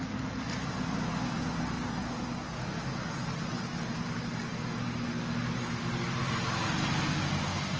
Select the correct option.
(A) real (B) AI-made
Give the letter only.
A